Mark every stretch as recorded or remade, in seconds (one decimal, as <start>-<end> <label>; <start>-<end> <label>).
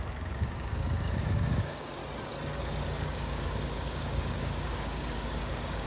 0.0-2.0 remade; 2.0-2.6 recorded; 2.6-5.9 remade